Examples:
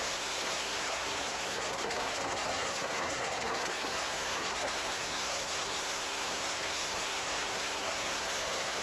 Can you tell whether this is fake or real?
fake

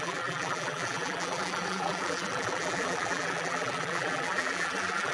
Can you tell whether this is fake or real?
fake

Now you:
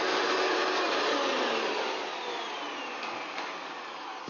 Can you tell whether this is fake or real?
real